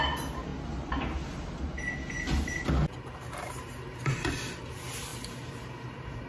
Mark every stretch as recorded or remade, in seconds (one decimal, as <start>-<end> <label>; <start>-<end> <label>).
0.0-6.3 recorded